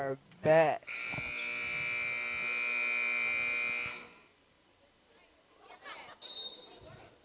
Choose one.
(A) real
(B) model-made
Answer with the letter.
A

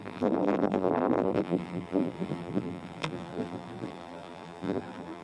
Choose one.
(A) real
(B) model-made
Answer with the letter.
B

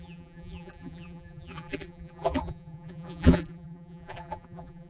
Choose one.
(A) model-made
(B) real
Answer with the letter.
A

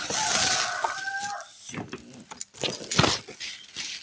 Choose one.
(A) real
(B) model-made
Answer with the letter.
A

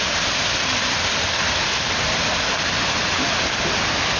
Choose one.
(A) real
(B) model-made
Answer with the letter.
B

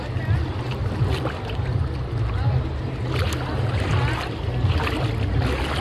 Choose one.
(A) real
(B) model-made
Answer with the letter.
A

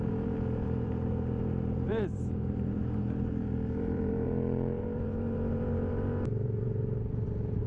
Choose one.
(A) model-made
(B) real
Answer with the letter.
A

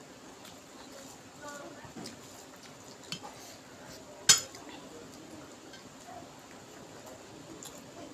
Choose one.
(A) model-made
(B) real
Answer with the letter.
B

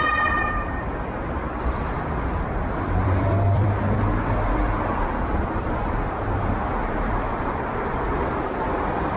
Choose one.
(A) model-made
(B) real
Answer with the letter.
A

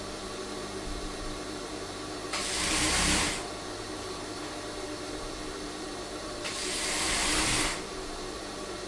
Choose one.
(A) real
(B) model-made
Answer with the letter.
B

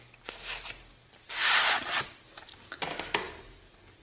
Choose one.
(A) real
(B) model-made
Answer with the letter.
B